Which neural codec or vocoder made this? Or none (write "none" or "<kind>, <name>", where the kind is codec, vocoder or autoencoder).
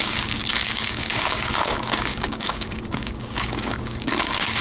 codec, DAC